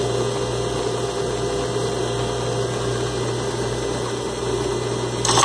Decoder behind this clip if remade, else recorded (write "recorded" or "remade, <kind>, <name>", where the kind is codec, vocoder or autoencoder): remade, vocoder, BigVGAN v2